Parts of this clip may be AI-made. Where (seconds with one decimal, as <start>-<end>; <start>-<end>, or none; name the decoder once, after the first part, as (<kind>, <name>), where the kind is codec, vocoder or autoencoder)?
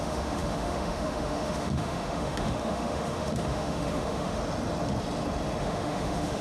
0.0-4.4 (autoencoder, DAC-VAE); 5.6-6.4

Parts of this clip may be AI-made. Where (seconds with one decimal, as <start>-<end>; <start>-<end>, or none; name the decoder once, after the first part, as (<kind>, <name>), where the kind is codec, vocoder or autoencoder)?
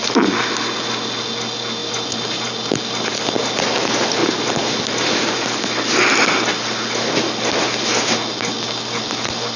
none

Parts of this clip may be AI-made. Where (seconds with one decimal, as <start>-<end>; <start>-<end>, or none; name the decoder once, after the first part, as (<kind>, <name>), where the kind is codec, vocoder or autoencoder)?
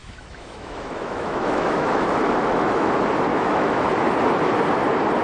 0.0-2.9 (autoencoder, DAC-VAE); 3.3-3.8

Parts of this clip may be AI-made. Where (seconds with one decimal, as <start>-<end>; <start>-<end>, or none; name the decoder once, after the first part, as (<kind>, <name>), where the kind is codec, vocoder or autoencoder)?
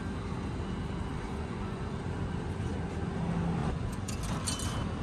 1.1-2.0 (vocoder, Vocos); 3.6-4.2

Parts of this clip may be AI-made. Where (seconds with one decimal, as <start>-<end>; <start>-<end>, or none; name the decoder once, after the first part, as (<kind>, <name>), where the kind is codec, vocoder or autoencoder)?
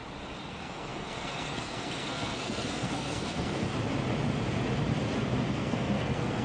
0.5-3.7 (codec, SNAC); 5.5-6.4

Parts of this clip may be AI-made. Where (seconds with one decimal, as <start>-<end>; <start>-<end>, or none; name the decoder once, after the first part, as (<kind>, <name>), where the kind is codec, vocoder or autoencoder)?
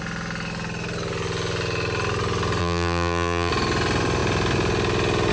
2.6-3.5 (vocoder, BigVGAN v2)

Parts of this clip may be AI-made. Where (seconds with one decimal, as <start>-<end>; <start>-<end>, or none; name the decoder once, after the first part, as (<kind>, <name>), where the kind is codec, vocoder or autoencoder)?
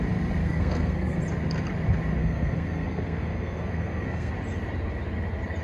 0.4-1.2 (codec, SNAC); 2.2-4.3